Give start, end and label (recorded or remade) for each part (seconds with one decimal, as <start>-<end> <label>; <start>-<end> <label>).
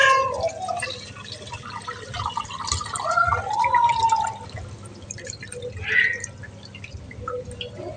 0.0-8.0 recorded